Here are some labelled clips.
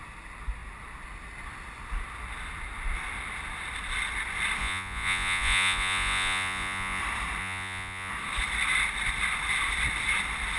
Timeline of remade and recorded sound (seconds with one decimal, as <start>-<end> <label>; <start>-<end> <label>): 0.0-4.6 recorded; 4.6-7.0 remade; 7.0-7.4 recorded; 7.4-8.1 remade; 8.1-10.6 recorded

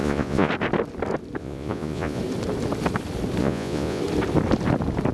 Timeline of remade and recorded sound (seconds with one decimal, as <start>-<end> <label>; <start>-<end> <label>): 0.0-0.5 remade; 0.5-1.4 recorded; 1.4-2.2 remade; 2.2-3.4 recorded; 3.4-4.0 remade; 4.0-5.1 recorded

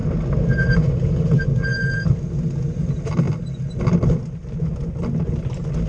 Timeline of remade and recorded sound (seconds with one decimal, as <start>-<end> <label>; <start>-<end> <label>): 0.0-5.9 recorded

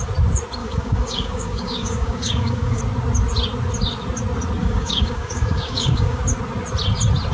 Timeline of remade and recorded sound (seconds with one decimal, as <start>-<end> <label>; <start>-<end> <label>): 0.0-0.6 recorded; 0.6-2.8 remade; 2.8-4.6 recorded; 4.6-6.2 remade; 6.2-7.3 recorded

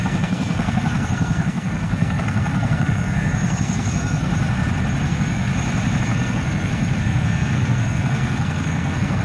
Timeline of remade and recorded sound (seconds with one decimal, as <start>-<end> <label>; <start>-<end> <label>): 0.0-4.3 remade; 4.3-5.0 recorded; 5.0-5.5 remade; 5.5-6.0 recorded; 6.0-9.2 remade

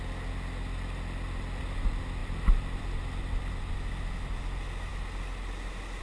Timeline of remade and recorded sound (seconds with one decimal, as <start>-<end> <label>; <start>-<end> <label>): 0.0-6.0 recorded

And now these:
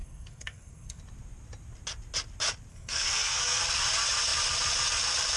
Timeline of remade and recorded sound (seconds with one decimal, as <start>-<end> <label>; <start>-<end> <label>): 0.0-1.0 remade; 1.0-2.7 recorded; 2.7-3.6 remade; 3.6-5.4 recorded